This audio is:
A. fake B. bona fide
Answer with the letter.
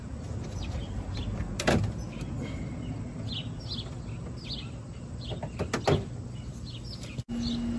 B